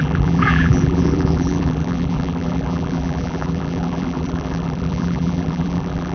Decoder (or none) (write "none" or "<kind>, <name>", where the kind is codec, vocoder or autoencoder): vocoder, BigVGAN v2